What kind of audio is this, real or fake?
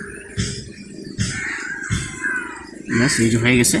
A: real